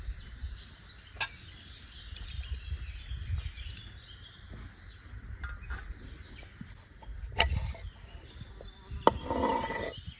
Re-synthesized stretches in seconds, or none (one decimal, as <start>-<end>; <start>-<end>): 6.9-7.5

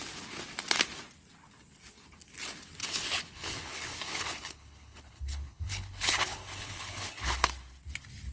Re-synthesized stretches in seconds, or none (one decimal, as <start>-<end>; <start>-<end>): 2.8-7.5

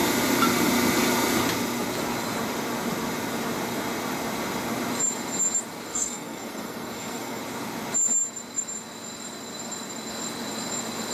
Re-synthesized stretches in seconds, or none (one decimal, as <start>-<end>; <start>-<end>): 5.9-7.4

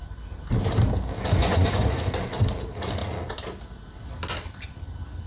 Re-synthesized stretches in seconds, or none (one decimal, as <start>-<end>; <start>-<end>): 1.4-2.0